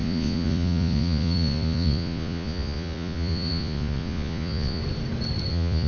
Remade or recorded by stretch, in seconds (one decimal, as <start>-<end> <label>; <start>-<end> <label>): 0.0-4.8 remade; 4.8-5.5 recorded; 5.5-5.9 remade